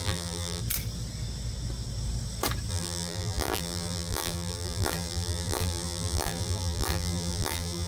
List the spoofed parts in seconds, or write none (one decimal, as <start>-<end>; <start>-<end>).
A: 0.0-0.6; 2.7-7.9